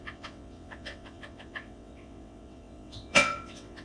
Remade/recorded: remade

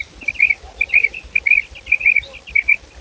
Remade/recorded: recorded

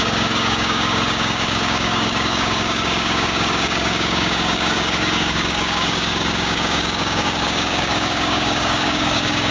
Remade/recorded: remade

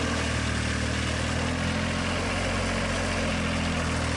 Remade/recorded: recorded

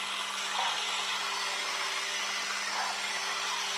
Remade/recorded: recorded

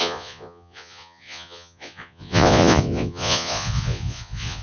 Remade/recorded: remade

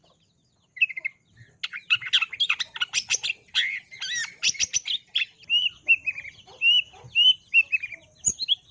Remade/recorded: recorded